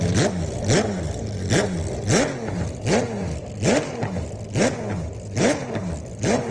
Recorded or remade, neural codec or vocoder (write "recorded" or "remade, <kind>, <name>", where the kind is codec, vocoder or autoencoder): recorded